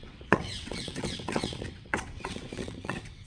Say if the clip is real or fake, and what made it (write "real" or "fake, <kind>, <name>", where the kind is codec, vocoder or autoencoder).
fake, vocoder, WaveNeXt